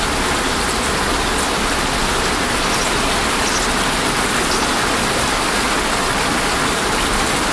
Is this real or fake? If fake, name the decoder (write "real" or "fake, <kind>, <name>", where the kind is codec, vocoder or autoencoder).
real